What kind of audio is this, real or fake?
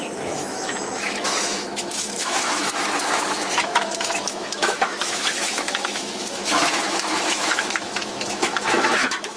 fake